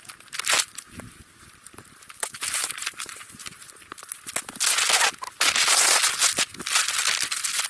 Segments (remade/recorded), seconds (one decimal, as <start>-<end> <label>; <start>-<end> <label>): 0.0-0.7 recorded; 0.7-4.2 remade; 4.2-7.7 recorded